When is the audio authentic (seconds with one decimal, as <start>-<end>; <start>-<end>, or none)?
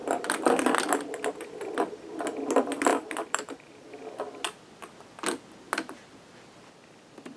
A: 0.0-2.9; 3.9-7.4